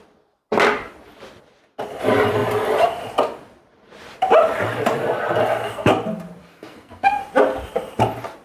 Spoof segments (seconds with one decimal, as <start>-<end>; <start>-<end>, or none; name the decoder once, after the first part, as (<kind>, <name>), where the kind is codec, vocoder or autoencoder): 5.4-5.9 (codec, SNAC); 6.4-7.2